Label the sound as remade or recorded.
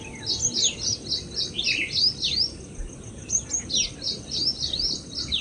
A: recorded